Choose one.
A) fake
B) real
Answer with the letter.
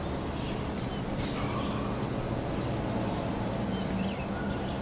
B